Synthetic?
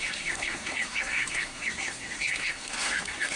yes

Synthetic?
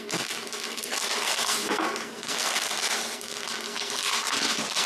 yes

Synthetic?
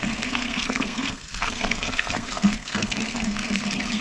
yes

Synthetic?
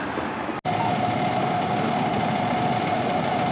no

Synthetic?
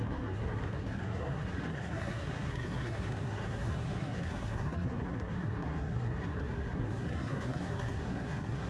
yes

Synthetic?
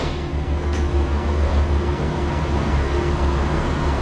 yes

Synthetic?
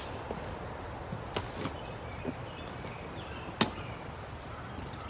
no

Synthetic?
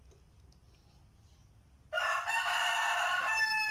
no